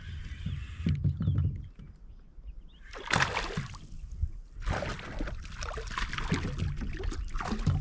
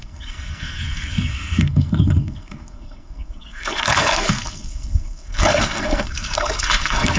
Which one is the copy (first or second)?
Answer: second